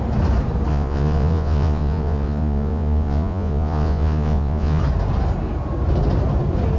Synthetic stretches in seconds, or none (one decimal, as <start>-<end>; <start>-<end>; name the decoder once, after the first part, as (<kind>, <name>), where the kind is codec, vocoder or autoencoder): 0.7-4.8 (vocoder, Vocos)